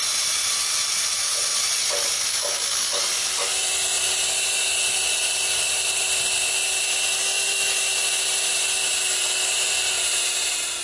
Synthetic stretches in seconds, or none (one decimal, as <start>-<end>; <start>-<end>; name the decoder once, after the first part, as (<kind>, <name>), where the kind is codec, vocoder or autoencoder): 2.3-3.0 (codec, DAC)